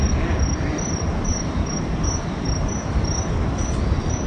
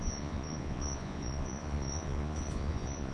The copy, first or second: second